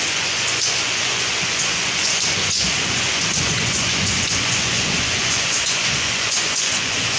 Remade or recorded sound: remade